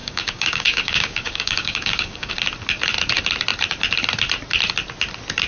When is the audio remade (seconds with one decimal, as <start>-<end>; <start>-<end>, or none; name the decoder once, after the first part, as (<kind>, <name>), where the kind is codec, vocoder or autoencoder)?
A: 0.0-2.3 (codec, DAC)